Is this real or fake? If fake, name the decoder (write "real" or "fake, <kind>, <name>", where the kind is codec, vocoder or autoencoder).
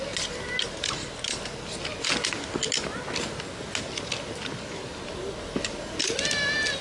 real